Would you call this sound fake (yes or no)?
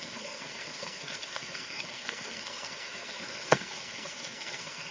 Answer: yes